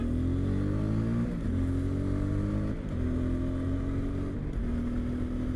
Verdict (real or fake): real